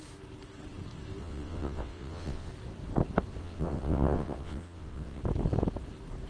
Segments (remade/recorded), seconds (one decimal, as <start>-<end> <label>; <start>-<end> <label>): 0.0-1.2 recorded; 1.2-2.5 remade; 2.5-3.4 recorded; 3.4-5.2 remade; 5.2-6.3 recorded